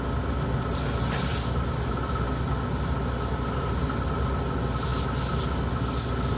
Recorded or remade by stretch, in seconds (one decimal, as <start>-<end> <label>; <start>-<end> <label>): 0.0-6.4 recorded